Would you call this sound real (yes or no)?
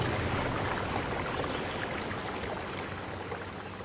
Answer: yes